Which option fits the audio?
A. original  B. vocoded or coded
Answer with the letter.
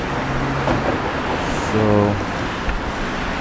A